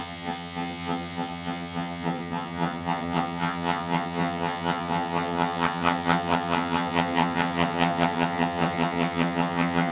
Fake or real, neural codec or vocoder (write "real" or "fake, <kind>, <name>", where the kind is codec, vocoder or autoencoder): fake, vocoder, HiFi-GAN